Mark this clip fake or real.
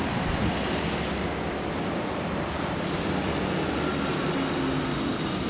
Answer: real